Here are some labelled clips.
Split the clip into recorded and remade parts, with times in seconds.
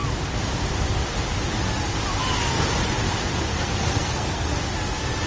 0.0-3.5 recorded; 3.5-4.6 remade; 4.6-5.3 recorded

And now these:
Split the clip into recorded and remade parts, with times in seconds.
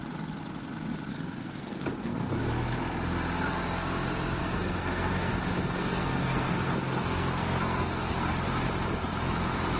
0.0-1.1 recorded; 1.1-2.4 remade; 2.4-4.4 recorded; 4.4-5.3 remade; 5.3-5.8 recorded; 5.8-8.3 remade; 8.3-9.8 recorded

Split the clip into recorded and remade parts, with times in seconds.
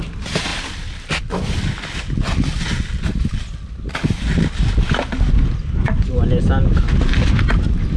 0.0-8.0 recorded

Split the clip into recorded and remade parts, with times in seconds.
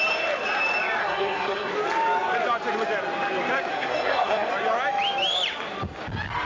0.0-1.0 recorded; 1.0-1.7 remade; 1.7-3.7 recorded; 3.7-4.5 remade; 4.5-6.4 recorded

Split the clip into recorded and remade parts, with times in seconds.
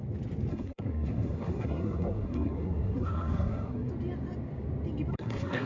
0.0-0.5 recorded; 0.5-3.9 remade; 3.9-5.1 recorded; 5.1-5.7 remade